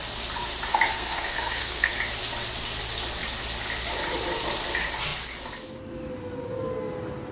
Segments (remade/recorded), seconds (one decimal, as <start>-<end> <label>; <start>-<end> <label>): 0.0-0.7 recorded; 0.7-1.9 remade; 1.9-7.3 recorded